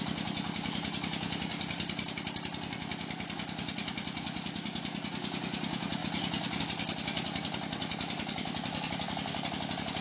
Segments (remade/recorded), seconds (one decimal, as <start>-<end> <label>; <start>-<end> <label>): 0.0-10.0 recorded